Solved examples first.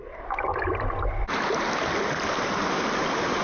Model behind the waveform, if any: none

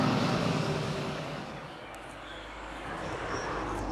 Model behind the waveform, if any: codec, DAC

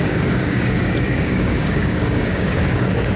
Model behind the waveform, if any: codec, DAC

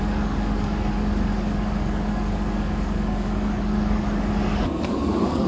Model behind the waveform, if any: codec, DAC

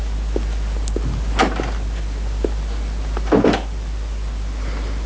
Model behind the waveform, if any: none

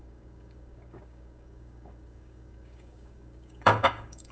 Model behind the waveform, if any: codec, DAC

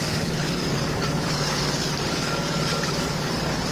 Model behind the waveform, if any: codec, DAC